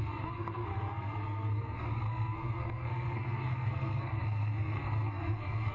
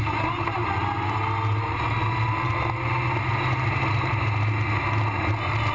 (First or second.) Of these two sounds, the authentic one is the second